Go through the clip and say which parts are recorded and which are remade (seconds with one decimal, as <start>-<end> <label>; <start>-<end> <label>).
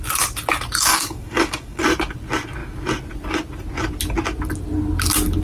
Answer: 0.0-0.9 recorded; 0.9-1.8 remade; 1.8-5.4 recorded